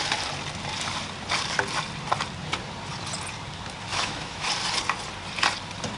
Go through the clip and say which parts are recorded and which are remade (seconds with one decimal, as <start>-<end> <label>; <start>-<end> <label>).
0.0-3.9 recorded; 3.9-4.5 remade; 4.5-6.0 recorded

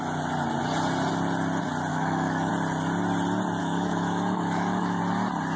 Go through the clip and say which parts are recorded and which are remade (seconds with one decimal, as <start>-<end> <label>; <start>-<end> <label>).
0.0-1.9 recorded; 1.9-2.5 remade; 2.5-3.6 recorded; 3.6-5.0 remade; 5.0-5.6 recorded

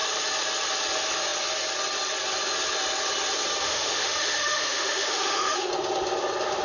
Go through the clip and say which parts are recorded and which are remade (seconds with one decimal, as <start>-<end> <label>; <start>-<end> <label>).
0.0-3.6 recorded; 3.6-5.7 remade; 5.7-6.6 recorded

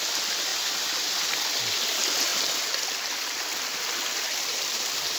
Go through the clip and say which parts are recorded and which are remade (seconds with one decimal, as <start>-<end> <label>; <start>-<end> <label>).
0.0-5.2 recorded

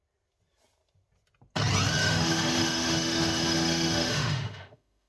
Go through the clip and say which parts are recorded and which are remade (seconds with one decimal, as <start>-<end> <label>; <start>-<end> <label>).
0.0-2.0 recorded; 2.0-5.1 remade

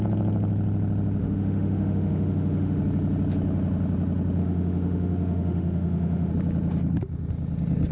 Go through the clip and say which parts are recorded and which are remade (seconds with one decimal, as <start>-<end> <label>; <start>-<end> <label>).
0.0-1.2 recorded; 1.2-2.8 remade; 2.8-4.4 recorded; 4.4-6.3 remade; 6.3-7.9 recorded

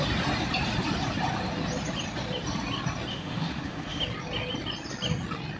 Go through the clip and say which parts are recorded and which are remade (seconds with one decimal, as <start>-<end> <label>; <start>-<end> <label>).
0.0-3.1 recorded; 3.1-4.0 remade; 4.0-5.6 recorded

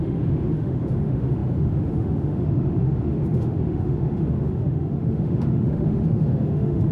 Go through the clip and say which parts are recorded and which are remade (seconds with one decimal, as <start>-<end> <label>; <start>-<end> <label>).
0.0-6.9 remade